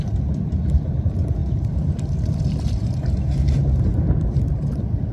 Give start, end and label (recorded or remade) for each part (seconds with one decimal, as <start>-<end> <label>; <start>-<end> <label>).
0.0-5.1 recorded